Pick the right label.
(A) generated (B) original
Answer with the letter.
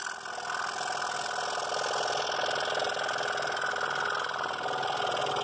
B